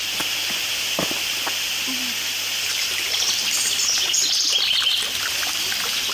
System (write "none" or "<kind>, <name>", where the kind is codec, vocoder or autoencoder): none